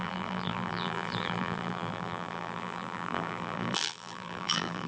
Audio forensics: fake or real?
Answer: fake